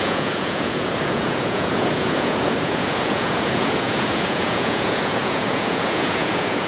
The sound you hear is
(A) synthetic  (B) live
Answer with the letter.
A